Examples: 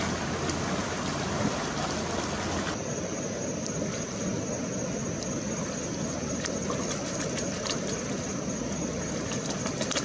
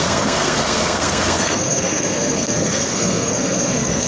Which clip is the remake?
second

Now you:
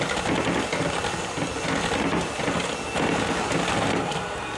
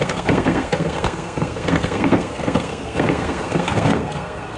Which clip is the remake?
second